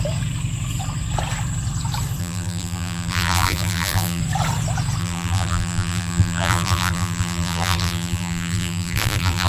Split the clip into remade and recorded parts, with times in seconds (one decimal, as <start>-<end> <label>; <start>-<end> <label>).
0.0-2.2 recorded; 2.2-4.2 remade; 4.2-5.0 recorded; 5.0-9.5 remade